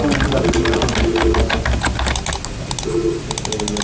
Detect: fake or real real